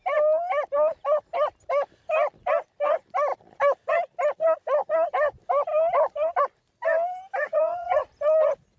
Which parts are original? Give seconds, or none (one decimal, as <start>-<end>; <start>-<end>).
0.0-7.4; 8.1-8.8